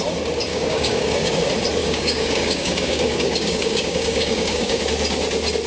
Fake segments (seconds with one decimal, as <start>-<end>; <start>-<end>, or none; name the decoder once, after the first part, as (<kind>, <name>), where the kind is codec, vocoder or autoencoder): 0.5-1.3 (codec, DAC); 1.8-4.8